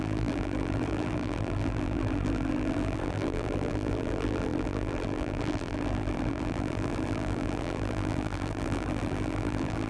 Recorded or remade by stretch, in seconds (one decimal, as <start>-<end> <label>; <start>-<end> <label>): 0.0-9.9 remade